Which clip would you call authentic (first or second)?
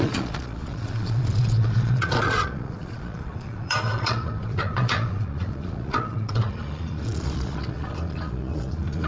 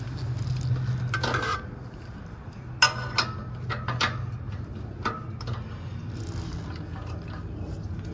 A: second